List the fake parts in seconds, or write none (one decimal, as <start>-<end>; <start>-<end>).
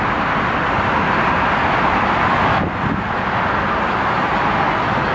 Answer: none